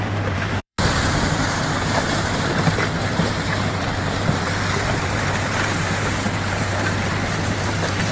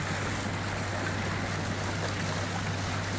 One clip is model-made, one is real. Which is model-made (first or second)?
first